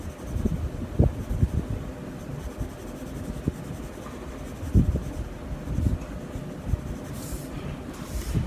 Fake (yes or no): no